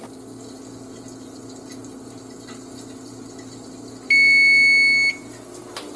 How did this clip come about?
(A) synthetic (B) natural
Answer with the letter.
B